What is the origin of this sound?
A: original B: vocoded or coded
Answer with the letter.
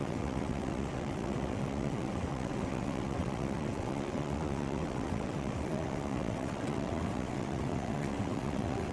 B